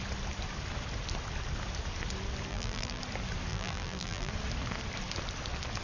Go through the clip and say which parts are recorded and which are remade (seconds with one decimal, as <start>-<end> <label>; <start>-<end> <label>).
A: 0.0-2.5 recorded; 2.5-3.0 remade; 3.0-3.5 recorded; 3.5-4.3 remade; 4.3-5.8 recorded